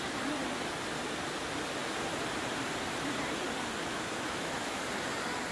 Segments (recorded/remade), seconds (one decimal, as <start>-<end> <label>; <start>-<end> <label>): 0.0-3.8 recorded; 3.8-4.8 remade; 4.8-5.5 recorded